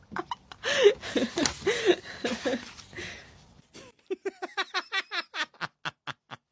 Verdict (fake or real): real